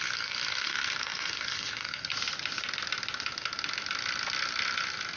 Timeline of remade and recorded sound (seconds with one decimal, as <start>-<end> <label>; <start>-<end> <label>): 0.0-2.1 remade; 2.1-5.2 recorded

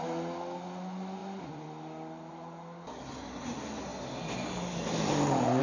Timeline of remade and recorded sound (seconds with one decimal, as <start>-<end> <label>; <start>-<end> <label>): 0.0-5.6 recorded

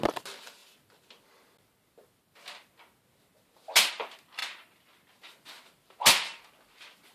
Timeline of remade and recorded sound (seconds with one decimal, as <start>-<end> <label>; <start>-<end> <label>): 0.0-7.1 recorded

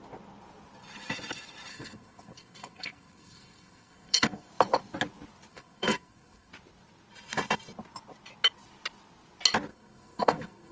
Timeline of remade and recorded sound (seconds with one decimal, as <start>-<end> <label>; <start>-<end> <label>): 0.0-1.7 recorded; 1.7-4.5 remade; 4.5-5.5 recorded; 5.5-6.5 remade; 6.5-9.7 recorded; 9.7-10.7 remade

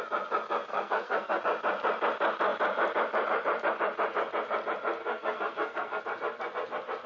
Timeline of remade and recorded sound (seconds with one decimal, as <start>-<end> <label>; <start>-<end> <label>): 0.0-0.7 recorded; 0.7-1.4 remade; 1.4-5.0 recorded; 5.0-6.0 remade; 6.0-7.1 recorded

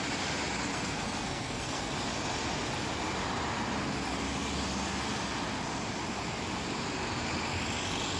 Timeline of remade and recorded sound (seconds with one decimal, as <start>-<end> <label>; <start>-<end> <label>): 0.0-0.7 recorded; 0.7-1.9 remade; 1.9-8.2 recorded

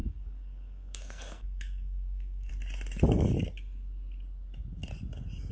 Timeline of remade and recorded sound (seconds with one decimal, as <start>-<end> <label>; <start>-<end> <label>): 0.0-2.5 remade; 2.5-5.5 recorded

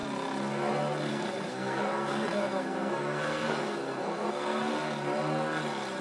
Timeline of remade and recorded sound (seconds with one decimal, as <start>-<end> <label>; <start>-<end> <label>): 0.0-1.1 recorded; 1.1-4.7 remade; 4.7-6.0 recorded